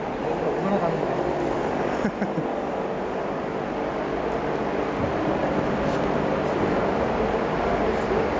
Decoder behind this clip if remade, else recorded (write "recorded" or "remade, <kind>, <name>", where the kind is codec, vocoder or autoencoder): recorded